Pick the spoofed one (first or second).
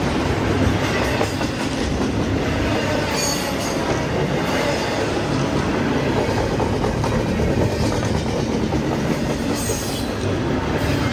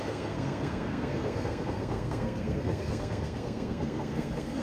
second